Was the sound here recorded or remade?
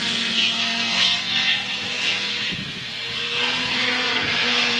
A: remade